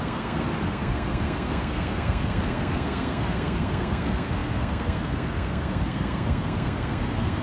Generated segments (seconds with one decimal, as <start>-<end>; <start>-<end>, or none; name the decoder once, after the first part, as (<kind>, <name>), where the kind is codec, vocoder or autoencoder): 0.0-7.4 (codec, SNAC)

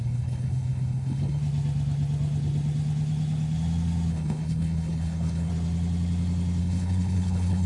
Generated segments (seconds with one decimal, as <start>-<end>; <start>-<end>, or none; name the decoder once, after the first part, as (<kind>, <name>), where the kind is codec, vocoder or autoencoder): 0.0-1.4 (codec, HILCodec); 4.1-5.5; 6.6-7.7

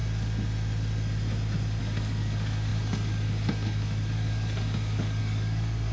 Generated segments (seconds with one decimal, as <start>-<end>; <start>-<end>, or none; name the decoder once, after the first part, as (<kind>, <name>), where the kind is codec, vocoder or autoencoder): 1.8-5.9 (codec, DAC)

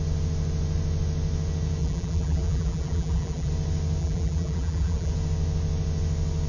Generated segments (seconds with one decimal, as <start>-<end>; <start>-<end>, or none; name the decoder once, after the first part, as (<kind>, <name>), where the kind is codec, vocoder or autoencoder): 1.8-3.5 (vocoder, BigVGAN v2); 4.0-5.1